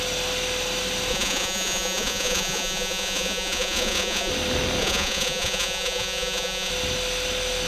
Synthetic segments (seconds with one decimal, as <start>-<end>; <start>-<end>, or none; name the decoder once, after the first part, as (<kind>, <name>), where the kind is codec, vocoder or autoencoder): 1.1-4.3 (vocoder, Vocos); 4.8-6.7